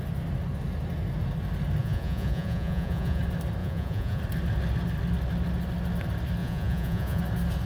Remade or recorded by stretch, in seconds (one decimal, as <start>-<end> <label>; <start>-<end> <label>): 0.0-1.8 recorded; 1.8-3.2 remade; 3.2-3.6 recorded; 3.6-4.2 remade; 4.2-6.4 recorded; 6.4-7.2 remade; 7.2-7.7 recorded